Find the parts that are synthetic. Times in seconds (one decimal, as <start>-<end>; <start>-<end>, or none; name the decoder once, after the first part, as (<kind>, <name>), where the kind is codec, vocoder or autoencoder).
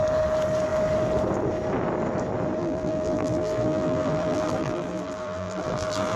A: 2.6-6.2 (vocoder, BigVGAN v2)